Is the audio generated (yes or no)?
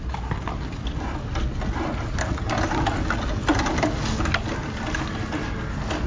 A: no